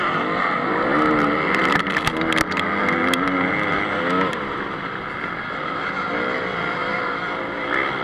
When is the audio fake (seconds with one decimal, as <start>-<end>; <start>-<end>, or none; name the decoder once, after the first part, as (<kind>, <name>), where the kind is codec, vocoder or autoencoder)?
none